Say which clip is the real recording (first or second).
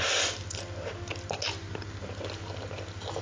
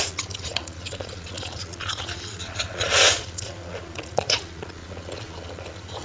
first